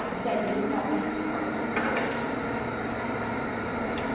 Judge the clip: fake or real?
real